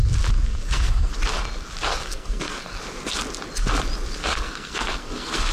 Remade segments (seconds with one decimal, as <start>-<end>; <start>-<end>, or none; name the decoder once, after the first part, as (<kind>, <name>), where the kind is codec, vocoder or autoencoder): 0.5-1.1 (codec, SNAC); 1.9-2.8; 4.2-5.5